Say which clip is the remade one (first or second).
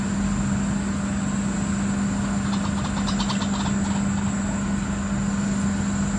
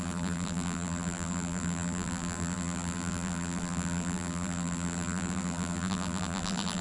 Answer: second